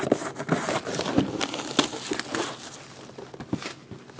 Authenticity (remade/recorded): recorded